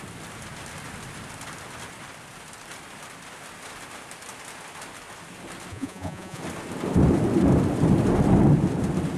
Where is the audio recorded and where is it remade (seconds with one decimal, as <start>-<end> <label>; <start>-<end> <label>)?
0.0-5.7 recorded; 5.7-6.4 remade; 6.4-9.2 recorded